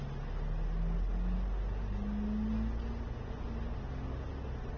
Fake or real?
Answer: real